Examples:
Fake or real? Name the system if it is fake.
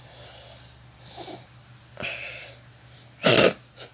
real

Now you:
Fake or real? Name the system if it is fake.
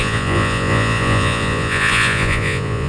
fake, vocoder, Vocos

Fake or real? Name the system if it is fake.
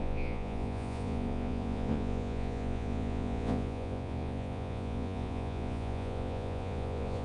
fake, vocoder, Vocos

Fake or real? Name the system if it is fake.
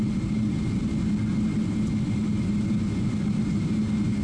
real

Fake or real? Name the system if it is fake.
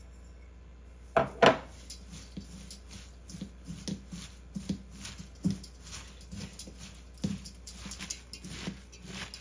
real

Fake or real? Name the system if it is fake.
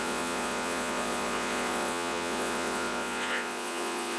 fake, vocoder, Vocos